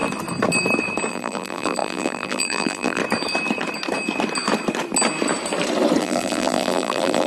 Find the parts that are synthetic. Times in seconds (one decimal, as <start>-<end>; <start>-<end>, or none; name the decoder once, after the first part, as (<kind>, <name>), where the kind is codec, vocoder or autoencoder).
1.1-3.0 (vocoder, BigVGAN v2); 6.0-7.3